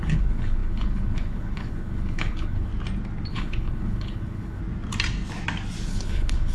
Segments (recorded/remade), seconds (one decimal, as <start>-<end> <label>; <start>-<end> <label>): 0.0-2.7 remade; 2.7-3.3 recorded; 3.3-4.6 remade; 4.6-5.9 recorded; 5.9-6.5 remade